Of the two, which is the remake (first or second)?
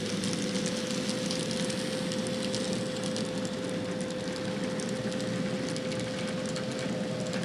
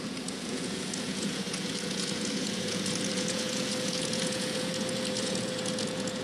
second